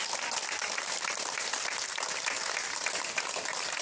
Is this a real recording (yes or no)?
yes